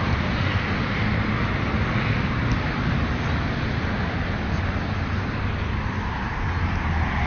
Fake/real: real